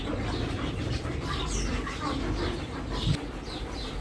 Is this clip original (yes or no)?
no